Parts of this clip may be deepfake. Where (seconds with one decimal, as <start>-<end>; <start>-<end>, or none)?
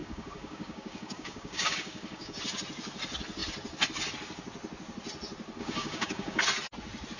0.0-2.4; 5.6-6.4